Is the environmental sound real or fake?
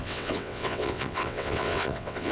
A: fake